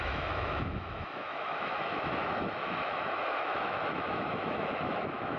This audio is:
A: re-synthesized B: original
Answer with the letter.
A